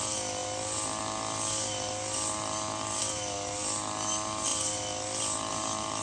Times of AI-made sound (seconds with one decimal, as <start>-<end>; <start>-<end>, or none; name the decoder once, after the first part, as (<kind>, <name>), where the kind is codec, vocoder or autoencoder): none